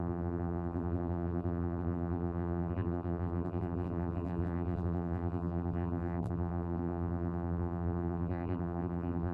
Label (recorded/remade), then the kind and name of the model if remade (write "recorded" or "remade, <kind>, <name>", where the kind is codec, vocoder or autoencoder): remade, vocoder, BigVGAN v2